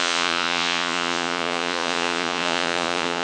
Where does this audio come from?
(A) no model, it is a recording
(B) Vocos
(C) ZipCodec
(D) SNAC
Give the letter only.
B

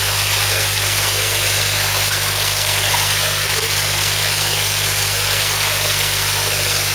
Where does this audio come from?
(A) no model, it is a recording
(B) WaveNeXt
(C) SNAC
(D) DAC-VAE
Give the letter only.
C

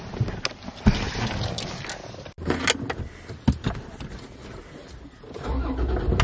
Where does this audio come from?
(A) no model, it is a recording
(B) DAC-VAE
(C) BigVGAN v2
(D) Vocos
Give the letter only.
A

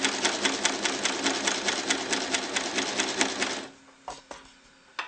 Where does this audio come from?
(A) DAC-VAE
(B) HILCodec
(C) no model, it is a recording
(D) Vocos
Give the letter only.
C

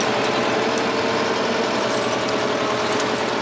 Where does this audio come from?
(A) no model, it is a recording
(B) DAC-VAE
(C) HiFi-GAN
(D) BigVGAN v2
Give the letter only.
A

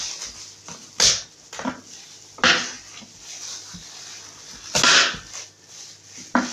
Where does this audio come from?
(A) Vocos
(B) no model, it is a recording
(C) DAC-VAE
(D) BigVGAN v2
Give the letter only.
B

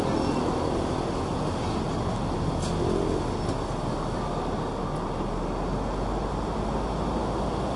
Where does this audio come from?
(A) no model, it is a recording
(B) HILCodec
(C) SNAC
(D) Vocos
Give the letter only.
A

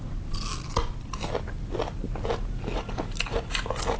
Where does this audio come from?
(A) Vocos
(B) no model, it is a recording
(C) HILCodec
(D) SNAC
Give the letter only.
B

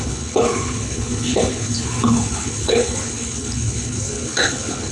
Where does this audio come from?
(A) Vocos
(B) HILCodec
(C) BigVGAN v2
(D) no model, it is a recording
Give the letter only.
B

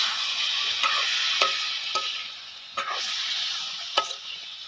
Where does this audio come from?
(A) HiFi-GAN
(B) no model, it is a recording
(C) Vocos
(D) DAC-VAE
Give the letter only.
C